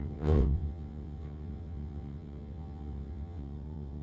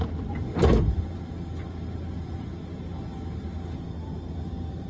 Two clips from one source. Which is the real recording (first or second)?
second